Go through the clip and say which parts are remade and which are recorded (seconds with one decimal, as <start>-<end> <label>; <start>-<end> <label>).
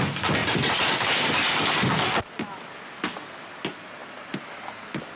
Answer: 0.0-5.2 recorded